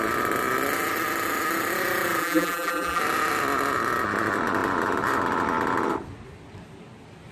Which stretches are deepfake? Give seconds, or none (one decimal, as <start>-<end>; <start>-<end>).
2.2-3.0